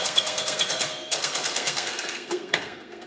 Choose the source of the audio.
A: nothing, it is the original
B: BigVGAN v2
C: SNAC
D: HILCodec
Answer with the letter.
C